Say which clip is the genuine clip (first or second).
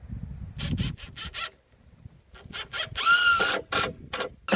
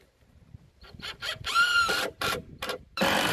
first